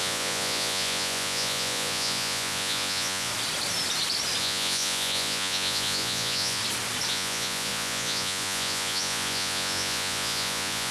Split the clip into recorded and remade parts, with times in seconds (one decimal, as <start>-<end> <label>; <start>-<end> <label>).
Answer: 0.0-3.3 remade; 3.3-4.4 recorded; 4.4-6.6 remade; 6.6-7.1 recorded; 7.1-10.9 remade